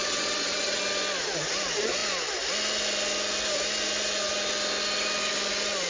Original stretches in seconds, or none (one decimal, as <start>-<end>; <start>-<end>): 0.8-5.9